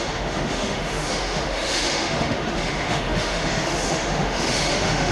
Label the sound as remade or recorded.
remade